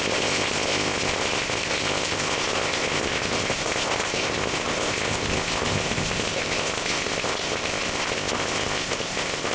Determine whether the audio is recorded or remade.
remade